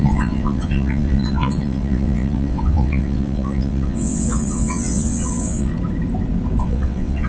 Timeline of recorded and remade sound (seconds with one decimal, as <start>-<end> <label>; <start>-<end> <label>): 0.0-5.7 remade; 5.7-6.6 recorded; 6.6-7.3 remade